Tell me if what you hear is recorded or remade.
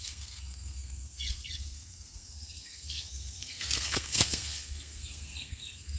remade